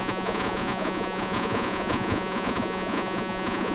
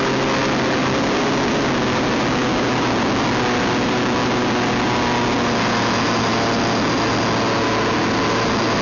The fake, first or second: first